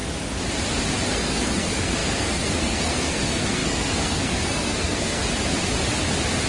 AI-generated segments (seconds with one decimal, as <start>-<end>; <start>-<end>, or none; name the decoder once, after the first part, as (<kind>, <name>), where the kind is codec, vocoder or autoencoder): 1.1-5.2 (codec, SNAC)